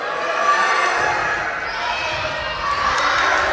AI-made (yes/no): no